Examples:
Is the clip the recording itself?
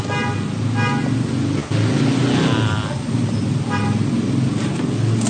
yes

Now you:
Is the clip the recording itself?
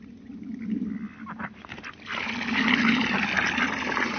yes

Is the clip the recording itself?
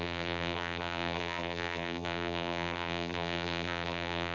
no